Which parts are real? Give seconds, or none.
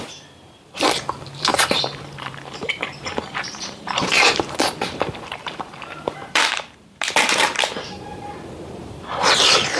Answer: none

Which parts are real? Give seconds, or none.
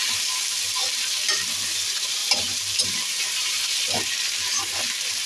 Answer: 0.0-2.2; 3.6-5.3